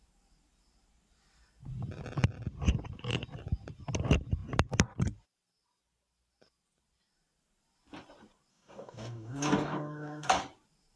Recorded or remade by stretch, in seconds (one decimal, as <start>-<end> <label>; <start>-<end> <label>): 0.0-8.5 recorded; 8.5-10.4 remade; 10.4-11.0 recorded